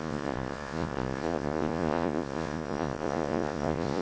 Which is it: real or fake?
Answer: fake